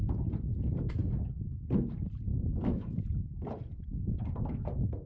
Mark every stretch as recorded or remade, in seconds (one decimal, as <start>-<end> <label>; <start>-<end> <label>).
0.0-2.3 recorded; 2.3-3.1 remade; 3.1-5.1 recorded